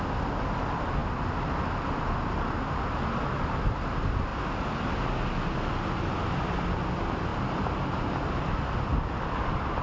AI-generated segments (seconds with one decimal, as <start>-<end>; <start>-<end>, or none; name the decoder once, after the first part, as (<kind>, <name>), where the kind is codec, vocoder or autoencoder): 7.3-8.1 (vocoder, BigVGAN v2)

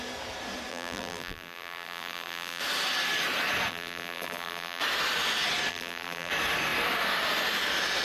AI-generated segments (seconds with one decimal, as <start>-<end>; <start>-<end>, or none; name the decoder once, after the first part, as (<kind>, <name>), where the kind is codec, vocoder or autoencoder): 0.7-2.6 (vocoder, BigVGAN v2); 3.7-4.8; 5.7-6.3

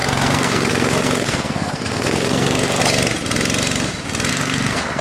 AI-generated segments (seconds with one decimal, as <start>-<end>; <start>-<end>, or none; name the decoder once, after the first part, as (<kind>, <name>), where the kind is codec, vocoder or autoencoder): 0.0-2.8 (codec, SNAC); 4.3-5.0

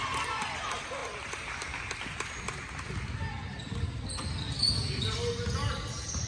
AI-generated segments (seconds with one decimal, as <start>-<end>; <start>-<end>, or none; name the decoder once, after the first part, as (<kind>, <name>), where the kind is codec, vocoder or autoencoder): none